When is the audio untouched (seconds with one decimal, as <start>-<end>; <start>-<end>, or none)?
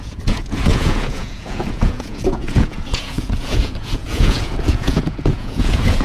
none